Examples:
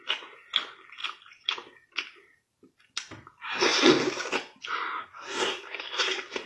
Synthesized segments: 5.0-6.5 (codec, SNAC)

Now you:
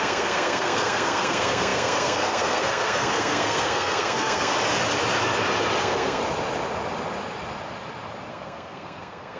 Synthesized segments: 0.0-4.5 (codec, SNAC); 5.8-6.2; 8.3-9.4

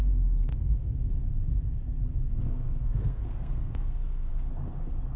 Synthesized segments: 0.5-1.1 (codec, SNAC); 2.3-4.3

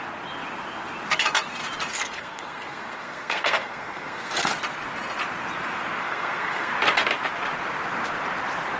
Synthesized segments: 1.9-4.5 (codec, SNAC); 6.0-6.7